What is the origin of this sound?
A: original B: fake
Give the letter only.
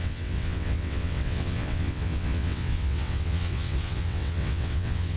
B